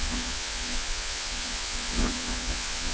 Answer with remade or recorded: remade